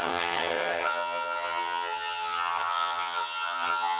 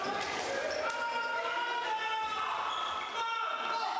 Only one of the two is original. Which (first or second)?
second